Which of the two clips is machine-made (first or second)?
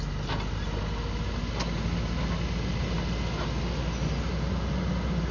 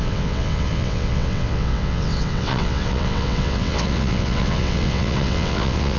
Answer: second